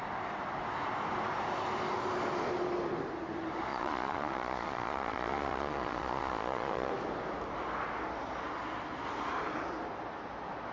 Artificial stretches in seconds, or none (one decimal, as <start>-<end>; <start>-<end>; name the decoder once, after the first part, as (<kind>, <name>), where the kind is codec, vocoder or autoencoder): 3.7-6.9 (vocoder, Vocos)